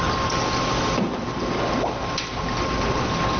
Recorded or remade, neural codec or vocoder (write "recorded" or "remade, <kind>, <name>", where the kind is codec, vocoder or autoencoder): recorded